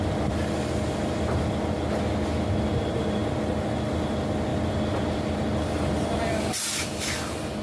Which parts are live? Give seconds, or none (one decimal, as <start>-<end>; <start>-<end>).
0.0-7.6